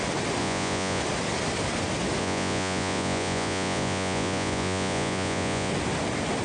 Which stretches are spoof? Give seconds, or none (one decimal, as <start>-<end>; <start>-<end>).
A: 0.4-1.0; 2.2-5.7